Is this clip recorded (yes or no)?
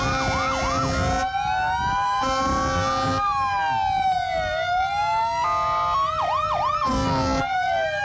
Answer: yes